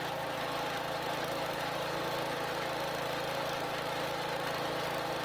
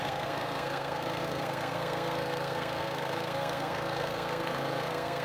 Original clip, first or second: first